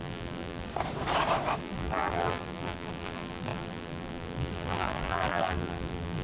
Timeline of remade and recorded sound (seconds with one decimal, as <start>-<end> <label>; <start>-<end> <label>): 0.0-0.7 remade; 0.7-1.6 recorded; 1.6-6.2 remade